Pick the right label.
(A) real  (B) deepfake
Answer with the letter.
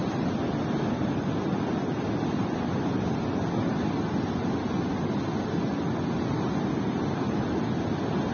A